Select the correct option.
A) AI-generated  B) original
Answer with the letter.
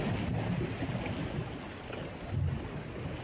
B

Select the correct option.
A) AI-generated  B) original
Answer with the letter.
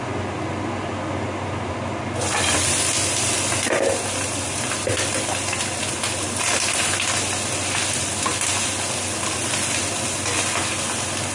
B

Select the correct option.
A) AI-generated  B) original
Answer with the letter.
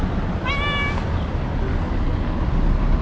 B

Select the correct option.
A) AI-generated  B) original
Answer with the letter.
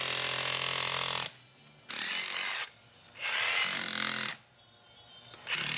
B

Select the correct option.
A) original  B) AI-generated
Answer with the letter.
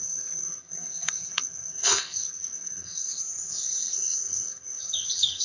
B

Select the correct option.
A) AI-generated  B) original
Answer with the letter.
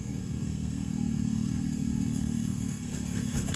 A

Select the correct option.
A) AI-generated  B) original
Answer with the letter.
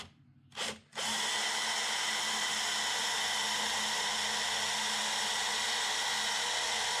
B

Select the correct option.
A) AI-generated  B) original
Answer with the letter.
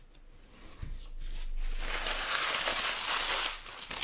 B